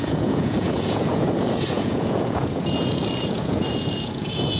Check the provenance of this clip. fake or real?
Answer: fake